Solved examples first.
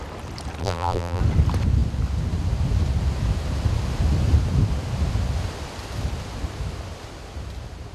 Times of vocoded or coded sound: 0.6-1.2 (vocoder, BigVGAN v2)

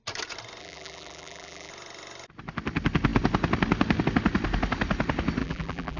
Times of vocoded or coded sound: 0.6-1.7 (vocoder, BigVGAN v2); 5.4-6.0

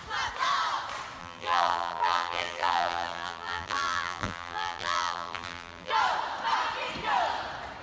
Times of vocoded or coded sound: 1.2-5.9 (vocoder, BigVGAN v2)

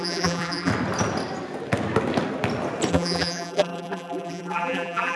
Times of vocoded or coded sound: 0.0-0.7 (vocoder, BigVGAN v2); 2.9-5.2